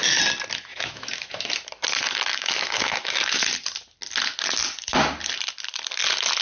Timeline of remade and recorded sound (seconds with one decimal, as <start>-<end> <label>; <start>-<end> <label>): 0.0-0.7 recorded; 0.7-1.5 remade; 1.5-2.3 recorded; 2.3-3.4 remade; 3.4-6.4 recorded